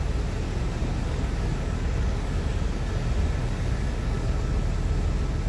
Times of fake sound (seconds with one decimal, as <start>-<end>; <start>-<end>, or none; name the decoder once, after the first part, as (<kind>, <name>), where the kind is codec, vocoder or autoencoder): 0.8-2.9 (codec, DAC); 3.4-4.5